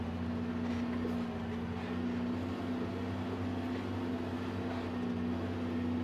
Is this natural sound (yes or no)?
yes